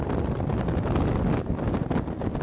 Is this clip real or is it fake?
real